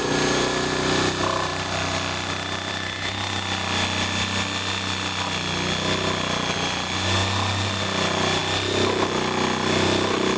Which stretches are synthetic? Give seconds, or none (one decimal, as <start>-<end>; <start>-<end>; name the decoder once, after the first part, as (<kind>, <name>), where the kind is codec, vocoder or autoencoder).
none